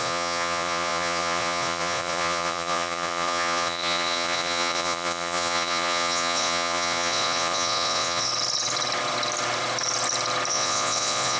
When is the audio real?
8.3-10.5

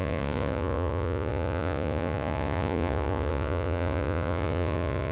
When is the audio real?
none